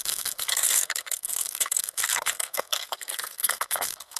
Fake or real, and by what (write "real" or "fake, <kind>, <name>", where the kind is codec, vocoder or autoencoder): fake, codec, SNAC